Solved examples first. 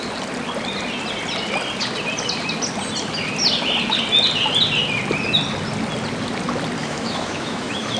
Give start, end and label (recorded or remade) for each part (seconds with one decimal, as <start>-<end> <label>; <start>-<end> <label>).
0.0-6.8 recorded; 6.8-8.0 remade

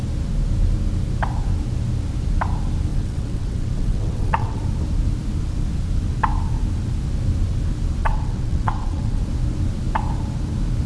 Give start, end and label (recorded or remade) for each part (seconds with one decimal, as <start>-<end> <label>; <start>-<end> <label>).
0.0-2.9 recorded; 2.9-4.6 remade; 4.6-8.0 recorded; 8.0-9.2 remade; 9.2-10.9 recorded

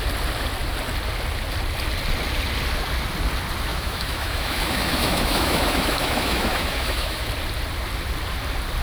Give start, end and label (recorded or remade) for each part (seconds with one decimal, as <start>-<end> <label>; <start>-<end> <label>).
0.0-3.7 recorded; 3.7-7.3 remade; 7.3-8.8 recorded